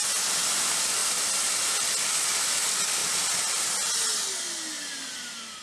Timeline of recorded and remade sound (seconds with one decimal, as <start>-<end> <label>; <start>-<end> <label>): 0.0-5.6 recorded